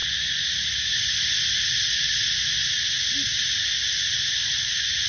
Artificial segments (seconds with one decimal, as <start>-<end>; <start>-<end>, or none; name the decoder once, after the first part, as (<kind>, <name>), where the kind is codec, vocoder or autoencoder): none